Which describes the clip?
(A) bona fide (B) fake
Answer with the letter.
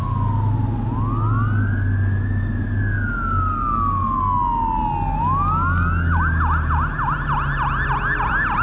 A